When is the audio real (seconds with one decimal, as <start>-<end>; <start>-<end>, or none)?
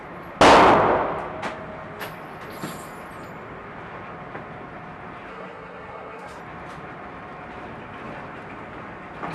0.0-5.3; 6.4-9.3